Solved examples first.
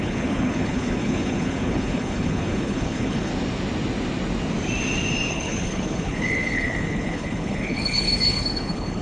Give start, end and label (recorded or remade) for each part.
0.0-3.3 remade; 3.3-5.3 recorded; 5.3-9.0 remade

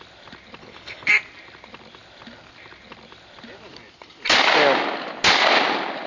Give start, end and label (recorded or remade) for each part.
0.0-0.6 recorded; 0.6-1.1 remade; 1.1-6.1 recorded

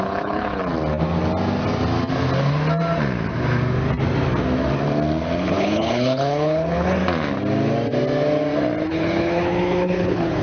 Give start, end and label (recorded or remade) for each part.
0.0-0.6 remade; 0.6-5.4 recorded; 5.4-7.0 remade; 7.0-8.9 recorded; 8.9-10.4 remade